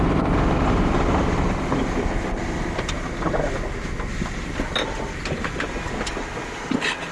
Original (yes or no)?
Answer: yes